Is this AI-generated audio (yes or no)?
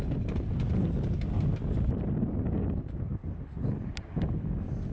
no